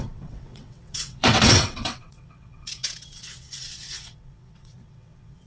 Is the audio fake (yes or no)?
yes